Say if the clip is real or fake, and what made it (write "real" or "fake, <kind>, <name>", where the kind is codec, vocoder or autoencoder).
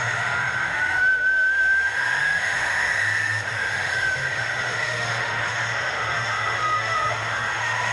fake, autoencoder, DAC-VAE